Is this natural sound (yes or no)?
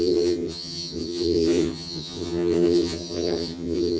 no